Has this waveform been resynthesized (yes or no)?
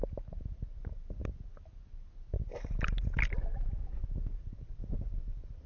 no